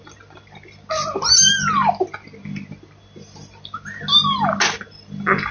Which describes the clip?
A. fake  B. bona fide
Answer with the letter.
B